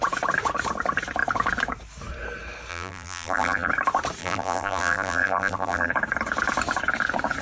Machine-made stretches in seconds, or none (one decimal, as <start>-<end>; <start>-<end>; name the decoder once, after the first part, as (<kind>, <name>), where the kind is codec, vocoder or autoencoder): 2.7-3.7 (vocoder, BigVGAN v2); 4.2-5.9

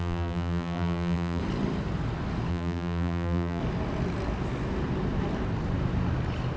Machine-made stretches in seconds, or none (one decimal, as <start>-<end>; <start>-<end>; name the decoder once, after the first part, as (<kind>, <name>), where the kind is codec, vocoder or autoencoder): 0.0-1.4 (vocoder, BigVGAN v2); 2.5-3.6

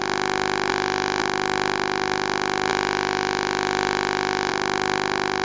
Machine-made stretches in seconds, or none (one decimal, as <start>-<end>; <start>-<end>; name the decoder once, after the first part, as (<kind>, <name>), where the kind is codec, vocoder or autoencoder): 0.0-0.7 (vocoder, BigVGAN v2); 1.2-2.7; 4.5-5.4

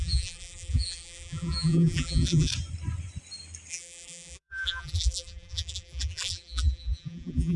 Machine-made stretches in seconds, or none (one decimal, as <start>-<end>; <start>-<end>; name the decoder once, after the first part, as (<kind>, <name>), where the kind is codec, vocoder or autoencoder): 0.0-2.5 (vocoder, BigVGAN v2); 3.7-7.6

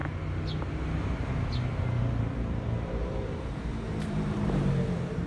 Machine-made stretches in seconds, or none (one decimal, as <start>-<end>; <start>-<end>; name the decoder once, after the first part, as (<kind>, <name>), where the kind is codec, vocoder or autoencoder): 1.7-5.3 (vocoder, BigVGAN v2)

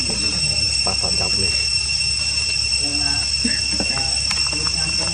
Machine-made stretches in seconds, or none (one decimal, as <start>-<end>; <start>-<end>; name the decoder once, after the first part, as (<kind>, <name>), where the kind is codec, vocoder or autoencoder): 0.0-0.7 (vocoder, BigVGAN v2); 1.7-2.5

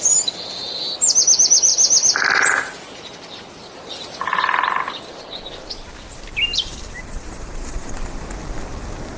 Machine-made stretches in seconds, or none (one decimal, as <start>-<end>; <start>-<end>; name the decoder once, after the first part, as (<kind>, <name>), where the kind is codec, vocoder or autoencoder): 6.5-7.9 (vocoder, BigVGAN v2)

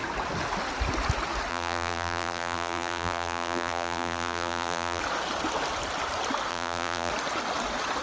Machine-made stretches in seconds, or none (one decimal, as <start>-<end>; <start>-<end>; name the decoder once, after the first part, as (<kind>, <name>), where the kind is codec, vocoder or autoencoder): 1.5-5.0 (vocoder, BigVGAN v2); 6.5-7.1